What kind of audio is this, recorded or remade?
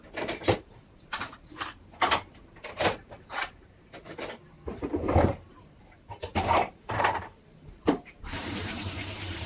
remade